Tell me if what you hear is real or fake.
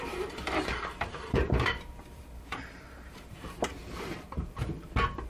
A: fake